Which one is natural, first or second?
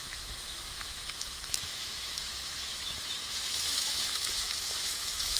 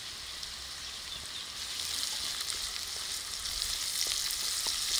second